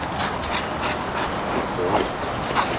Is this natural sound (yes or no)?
yes